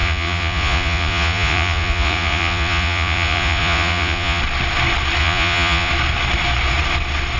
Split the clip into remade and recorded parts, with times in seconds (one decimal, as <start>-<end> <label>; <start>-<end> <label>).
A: 0.0-4.4 remade; 4.4-5.2 recorded; 5.2-5.9 remade; 5.9-7.4 recorded